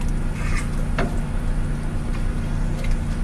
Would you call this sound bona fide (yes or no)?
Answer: yes